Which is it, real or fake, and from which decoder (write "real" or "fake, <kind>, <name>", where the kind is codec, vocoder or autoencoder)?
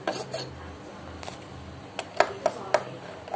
real